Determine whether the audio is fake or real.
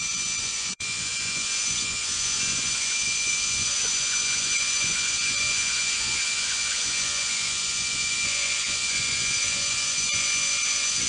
fake